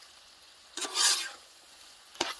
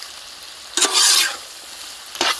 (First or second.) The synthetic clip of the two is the first